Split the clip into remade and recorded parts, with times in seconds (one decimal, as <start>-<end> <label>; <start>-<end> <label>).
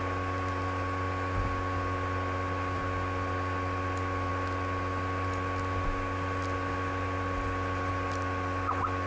0.0-9.1 recorded